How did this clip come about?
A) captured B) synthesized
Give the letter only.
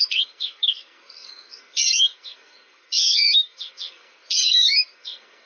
B